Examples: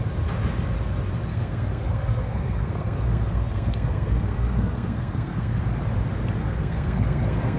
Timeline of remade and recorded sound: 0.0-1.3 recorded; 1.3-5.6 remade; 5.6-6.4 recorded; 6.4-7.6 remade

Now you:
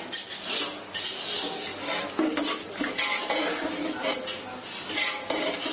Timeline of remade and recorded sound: 0.0-5.7 recorded

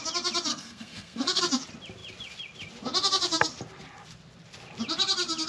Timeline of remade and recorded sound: 0.0-0.5 recorded; 0.5-1.4 remade; 1.4-5.5 recorded

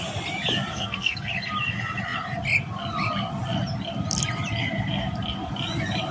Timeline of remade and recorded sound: 0.0-0.7 recorded; 0.7-1.3 remade; 1.3-6.1 recorded